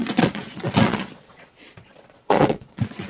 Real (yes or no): no